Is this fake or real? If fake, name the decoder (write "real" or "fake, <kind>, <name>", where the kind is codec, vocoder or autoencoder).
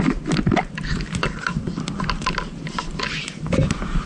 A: fake, vocoder, BigVGAN v2